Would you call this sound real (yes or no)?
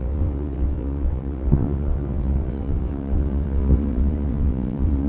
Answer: no